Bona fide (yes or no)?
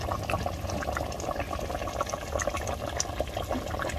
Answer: yes